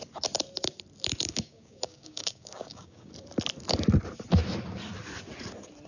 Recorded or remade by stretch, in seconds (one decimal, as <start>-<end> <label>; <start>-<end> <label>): 0.0-1.3 recorded; 1.3-3.1 remade; 3.1-5.9 recorded